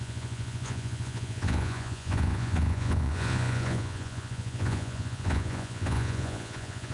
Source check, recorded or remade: remade